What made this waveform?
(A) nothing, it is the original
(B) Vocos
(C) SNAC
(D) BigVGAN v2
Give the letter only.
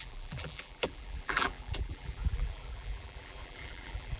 D